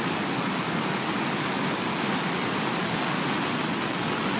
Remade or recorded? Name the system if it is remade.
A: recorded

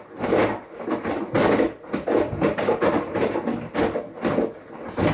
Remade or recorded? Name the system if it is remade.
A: recorded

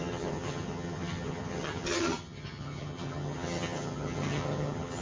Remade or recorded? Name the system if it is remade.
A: remade, vocoder, HiFi-GAN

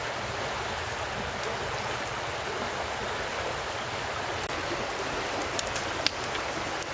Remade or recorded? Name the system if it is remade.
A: recorded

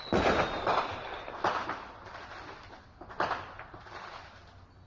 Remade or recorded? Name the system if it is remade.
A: recorded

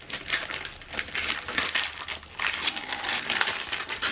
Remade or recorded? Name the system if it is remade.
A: recorded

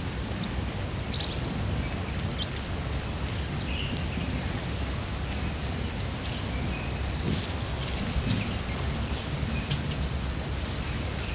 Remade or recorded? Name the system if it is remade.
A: recorded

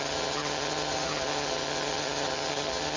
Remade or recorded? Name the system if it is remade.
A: remade, vocoder, HiFi-GAN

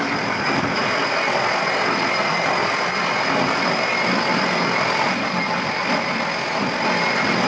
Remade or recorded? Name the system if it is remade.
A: recorded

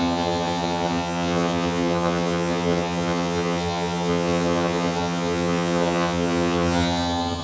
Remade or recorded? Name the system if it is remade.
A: remade, vocoder, HiFi-GAN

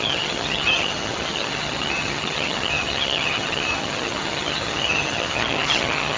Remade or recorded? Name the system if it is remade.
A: remade, vocoder, HiFi-GAN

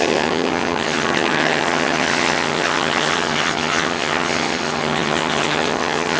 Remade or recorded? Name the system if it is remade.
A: remade, vocoder, HiFi-GAN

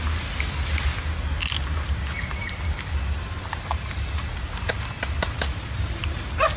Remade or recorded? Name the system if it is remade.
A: recorded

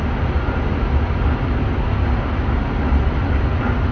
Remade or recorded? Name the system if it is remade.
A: recorded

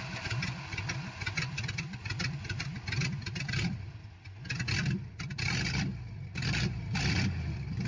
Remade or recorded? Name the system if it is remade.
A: recorded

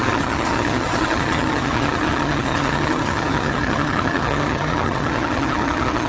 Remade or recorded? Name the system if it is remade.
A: remade, vocoder, HiFi-GAN